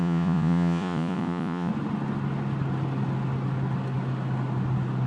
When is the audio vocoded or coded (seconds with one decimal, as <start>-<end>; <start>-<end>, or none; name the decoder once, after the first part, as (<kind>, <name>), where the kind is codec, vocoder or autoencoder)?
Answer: 0.0-1.7 (vocoder, Vocos)